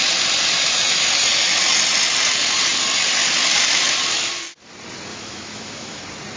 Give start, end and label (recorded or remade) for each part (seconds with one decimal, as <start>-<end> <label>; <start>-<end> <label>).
0.0-5.1 recorded; 5.1-6.0 remade; 6.0-6.4 recorded